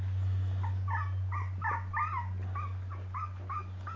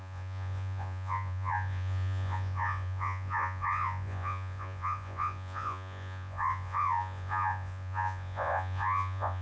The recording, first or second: first